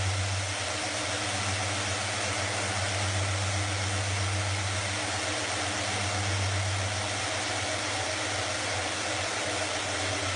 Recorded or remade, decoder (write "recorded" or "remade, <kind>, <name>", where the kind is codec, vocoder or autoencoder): recorded